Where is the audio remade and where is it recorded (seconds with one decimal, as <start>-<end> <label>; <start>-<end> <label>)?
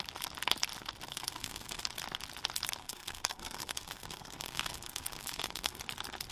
0.0-1.1 recorded; 1.1-1.8 remade; 1.8-2.8 recorded; 2.8-5.8 remade; 5.8-6.3 recorded